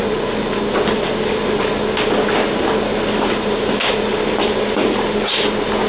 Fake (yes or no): no